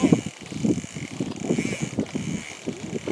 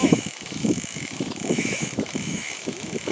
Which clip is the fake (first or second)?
second